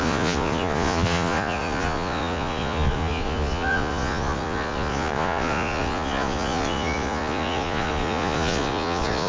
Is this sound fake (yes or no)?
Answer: yes